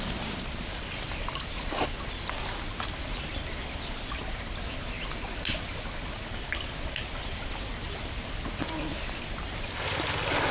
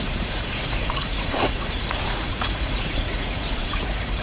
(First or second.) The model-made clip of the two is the second